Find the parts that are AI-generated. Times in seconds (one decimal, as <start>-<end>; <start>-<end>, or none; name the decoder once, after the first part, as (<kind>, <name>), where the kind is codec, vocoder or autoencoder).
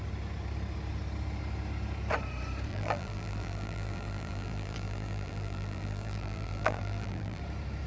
2.7-7.4 (vocoder, BigVGAN v2)